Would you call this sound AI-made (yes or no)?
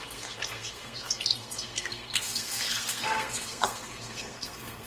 yes